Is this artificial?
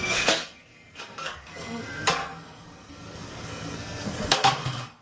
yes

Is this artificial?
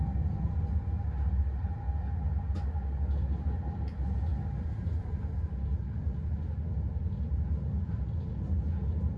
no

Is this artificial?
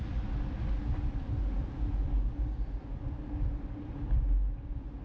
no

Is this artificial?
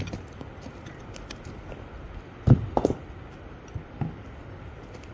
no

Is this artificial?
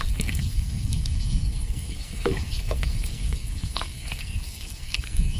yes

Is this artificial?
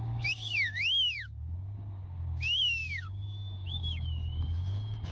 yes